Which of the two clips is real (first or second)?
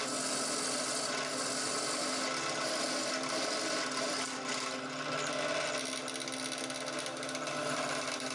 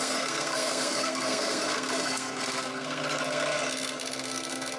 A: first